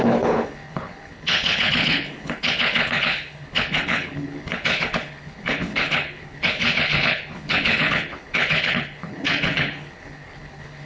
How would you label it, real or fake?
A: fake